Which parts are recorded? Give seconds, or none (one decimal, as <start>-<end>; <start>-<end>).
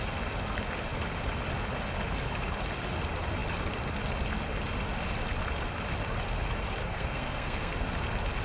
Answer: 0.0-6.8; 7.9-8.4